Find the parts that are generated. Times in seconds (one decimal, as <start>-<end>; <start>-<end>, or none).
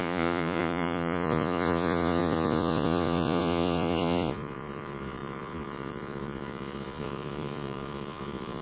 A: 0.0-8.6